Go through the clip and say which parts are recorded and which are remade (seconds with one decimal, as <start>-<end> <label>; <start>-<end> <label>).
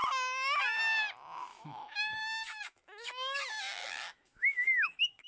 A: 0.0-0.6 remade; 0.6-1.5 recorded; 1.5-3.4 remade; 3.4-3.8 recorded; 3.8-5.3 remade